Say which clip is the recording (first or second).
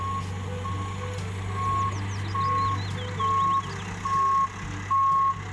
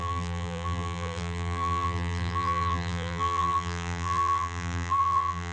first